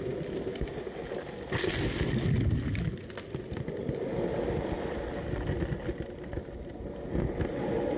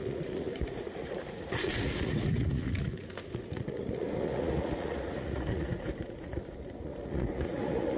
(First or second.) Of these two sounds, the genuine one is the first